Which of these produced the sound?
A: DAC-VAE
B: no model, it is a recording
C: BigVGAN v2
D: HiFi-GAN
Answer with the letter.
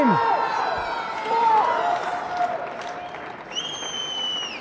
B